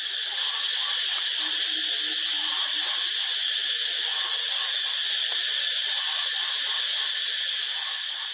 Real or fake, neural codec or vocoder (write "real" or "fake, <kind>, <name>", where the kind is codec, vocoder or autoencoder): real